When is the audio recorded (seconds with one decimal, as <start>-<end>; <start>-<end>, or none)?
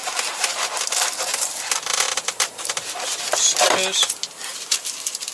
3.2-4.5